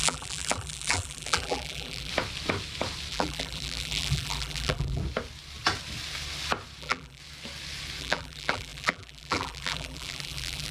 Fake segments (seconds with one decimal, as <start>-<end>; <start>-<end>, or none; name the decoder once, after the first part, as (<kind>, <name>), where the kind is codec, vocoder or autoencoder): 0.0-2.1 (vocoder, BigVGAN v2); 3.1-5.0; 6.8-7.2; 8.0-10.7